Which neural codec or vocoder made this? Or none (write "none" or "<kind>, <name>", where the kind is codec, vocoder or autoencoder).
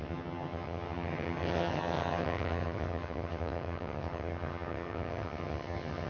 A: vocoder, HiFi-GAN